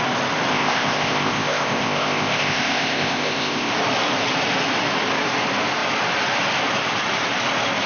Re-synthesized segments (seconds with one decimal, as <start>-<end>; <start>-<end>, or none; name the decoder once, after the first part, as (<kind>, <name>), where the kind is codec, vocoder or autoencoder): 0.5-3.7 (codec, ZipCodec)